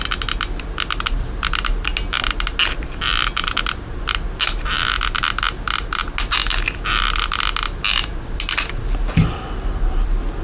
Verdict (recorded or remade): recorded